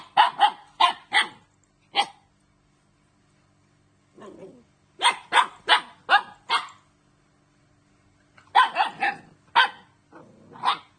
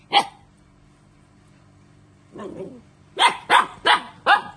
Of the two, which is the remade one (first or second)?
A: second